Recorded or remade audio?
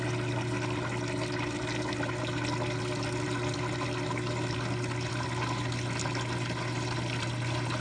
recorded